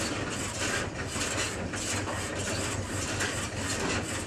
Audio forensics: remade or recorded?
recorded